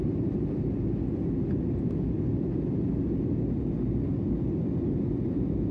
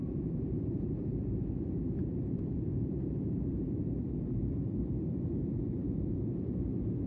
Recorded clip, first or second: first